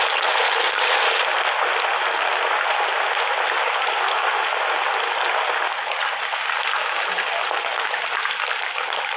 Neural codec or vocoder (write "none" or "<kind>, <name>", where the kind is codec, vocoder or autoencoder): none